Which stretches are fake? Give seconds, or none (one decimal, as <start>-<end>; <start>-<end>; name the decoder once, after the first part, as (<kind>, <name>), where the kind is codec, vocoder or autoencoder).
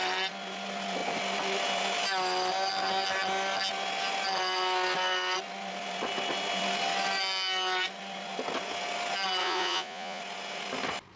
9.4-10.2 (vocoder, Vocos)